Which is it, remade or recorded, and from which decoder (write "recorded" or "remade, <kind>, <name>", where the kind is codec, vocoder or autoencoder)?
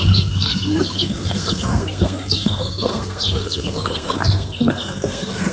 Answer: remade, codec, SNAC